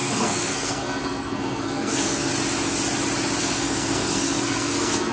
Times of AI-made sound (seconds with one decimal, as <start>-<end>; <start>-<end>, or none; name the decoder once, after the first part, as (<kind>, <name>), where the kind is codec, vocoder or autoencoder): 0.0-2.3 (codec, SNAC); 3.4-5.1